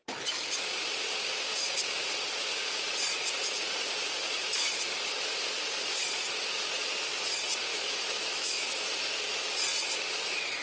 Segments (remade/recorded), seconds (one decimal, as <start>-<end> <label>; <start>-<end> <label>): 0.0-7.7 recorded; 7.7-8.9 remade; 8.9-10.6 recorded